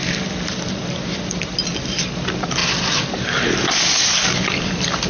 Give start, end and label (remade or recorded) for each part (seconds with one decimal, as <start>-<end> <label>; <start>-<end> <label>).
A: 0.0-5.1 recorded